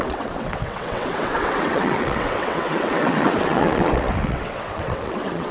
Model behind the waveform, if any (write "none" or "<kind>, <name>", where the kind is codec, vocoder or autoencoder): vocoder, WaveNeXt